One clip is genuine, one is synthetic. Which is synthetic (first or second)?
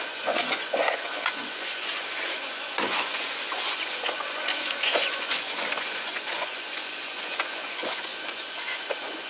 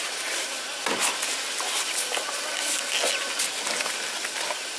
first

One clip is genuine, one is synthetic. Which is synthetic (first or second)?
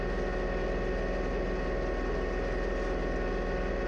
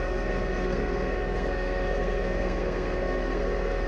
second